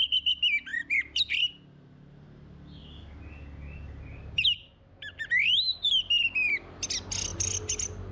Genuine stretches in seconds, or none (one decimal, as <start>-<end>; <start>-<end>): 0.0-7.3